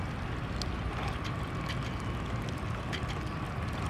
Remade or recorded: recorded